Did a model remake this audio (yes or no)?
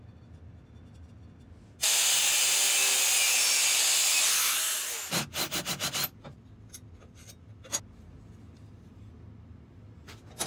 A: no